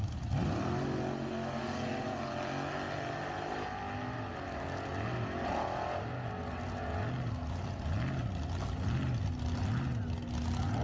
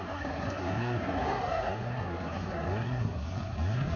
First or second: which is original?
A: first